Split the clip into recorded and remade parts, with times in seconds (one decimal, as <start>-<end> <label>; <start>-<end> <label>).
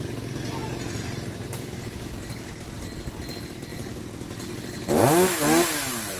0.0-0.6 recorded; 0.6-3.0 remade; 3.0-3.7 recorded; 3.7-4.9 remade; 4.9-6.2 recorded